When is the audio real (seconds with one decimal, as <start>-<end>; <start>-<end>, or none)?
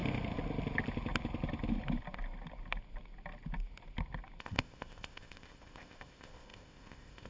0.0-4.4